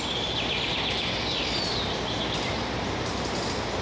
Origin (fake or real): real